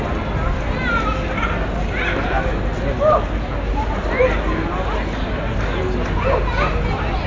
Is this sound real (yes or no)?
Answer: yes